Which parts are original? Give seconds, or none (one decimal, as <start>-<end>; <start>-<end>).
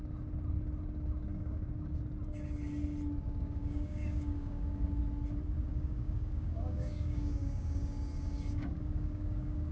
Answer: 0.0-1.3; 1.9-3.2; 5.0-5.7